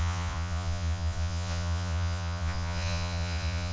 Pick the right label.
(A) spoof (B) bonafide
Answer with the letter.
A